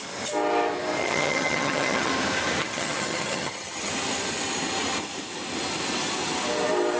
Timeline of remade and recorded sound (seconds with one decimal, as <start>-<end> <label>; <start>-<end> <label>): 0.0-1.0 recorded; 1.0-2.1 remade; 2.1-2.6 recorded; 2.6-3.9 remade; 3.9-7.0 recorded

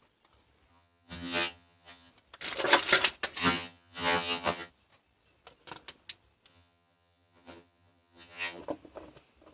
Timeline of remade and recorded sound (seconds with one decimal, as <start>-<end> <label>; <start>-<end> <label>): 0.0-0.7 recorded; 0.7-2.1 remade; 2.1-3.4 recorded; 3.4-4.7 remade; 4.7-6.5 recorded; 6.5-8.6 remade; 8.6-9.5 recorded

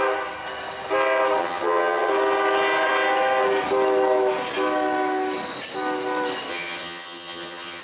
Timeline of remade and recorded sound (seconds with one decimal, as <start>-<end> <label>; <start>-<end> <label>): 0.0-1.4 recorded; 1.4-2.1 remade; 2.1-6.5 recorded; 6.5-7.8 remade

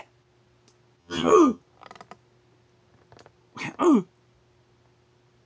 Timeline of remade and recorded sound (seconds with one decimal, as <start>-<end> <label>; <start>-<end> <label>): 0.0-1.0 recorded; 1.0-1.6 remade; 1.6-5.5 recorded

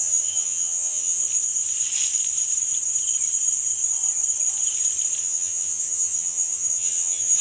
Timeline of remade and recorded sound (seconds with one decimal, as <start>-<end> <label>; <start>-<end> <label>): 0.0-1.2 remade; 1.2-5.2 recorded; 5.2-7.4 remade

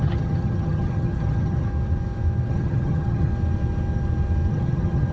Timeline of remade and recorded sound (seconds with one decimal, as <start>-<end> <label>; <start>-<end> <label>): 0.0-1.7 remade; 1.7-2.5 recorded; 2.5-3.3 remade; 3.3-4.5 recorded; 4.5-5.1 remade

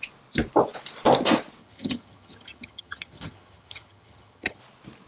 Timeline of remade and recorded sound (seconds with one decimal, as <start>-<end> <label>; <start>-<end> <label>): 0.0-1.6 recorded; 1.6-4.6 remade; 4.6-5.1 recorded